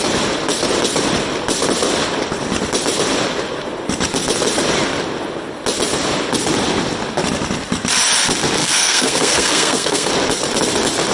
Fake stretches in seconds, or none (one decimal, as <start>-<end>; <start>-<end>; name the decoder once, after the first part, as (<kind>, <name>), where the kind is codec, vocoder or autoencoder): 8.6-10.1 (codec, SNAC)